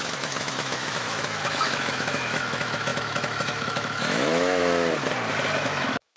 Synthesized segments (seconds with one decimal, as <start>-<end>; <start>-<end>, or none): 0.0-4.6; 5.6-6.2